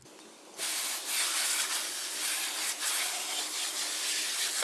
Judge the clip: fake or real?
real